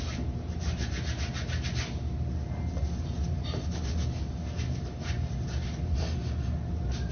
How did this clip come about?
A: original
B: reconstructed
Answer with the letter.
A